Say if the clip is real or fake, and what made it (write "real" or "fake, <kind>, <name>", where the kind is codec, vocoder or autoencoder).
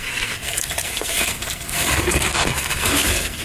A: fake, codec, SNAC